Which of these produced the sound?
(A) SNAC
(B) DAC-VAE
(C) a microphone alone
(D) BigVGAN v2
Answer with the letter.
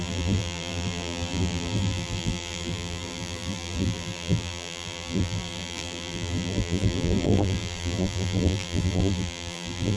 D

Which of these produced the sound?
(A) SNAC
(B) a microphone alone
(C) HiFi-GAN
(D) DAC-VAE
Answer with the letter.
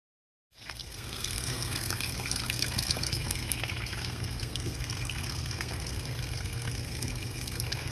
A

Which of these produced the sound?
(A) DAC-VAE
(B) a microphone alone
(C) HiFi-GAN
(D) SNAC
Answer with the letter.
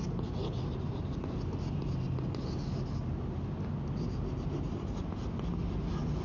B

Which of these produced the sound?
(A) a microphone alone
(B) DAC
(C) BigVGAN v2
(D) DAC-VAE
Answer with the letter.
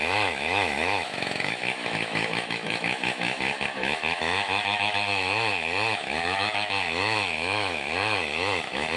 D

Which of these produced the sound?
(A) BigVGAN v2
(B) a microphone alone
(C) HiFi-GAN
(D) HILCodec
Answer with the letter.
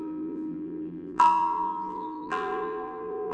A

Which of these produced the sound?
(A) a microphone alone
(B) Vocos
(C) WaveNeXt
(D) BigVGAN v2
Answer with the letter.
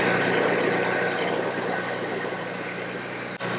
A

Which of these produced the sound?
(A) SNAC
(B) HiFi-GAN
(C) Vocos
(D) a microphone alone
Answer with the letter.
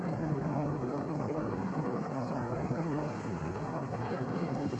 A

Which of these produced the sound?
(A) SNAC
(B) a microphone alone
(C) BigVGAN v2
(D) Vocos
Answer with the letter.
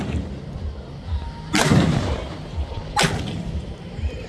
B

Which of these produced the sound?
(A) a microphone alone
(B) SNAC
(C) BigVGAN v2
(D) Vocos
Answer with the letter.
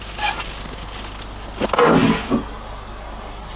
A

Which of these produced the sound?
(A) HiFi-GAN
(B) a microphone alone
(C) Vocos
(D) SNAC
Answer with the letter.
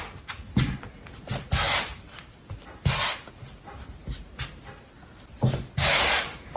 B